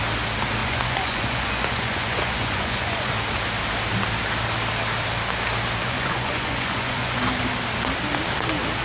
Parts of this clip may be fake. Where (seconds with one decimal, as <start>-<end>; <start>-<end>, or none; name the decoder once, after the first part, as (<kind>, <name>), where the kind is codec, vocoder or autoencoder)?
0.6-3.1 (vocoder, Vocos); 5.8-7.2